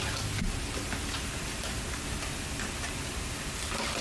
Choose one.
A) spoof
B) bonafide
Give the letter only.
B